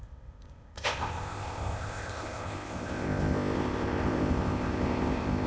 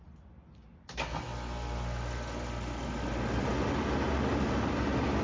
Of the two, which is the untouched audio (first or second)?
second